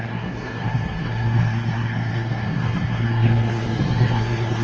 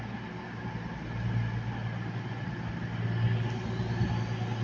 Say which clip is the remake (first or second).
first